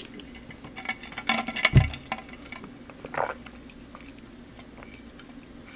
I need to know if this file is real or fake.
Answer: real